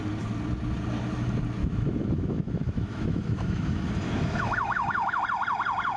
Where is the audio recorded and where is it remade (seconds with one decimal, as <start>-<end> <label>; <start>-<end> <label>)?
0.0-1.6 recorded; 1.6-5.2 remade; 5.2-6.0 recorded